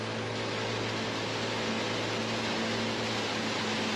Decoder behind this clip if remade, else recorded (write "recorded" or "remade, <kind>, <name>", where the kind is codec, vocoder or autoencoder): recorded